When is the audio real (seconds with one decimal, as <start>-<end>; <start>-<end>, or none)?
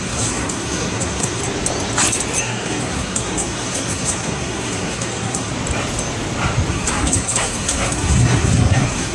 1.4-2.4; 5.5-6.7